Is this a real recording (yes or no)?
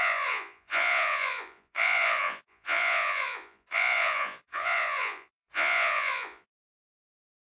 no